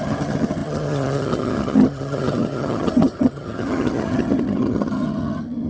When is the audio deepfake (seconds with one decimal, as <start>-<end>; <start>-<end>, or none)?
0.0-5.7